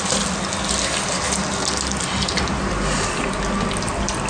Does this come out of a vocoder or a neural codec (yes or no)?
no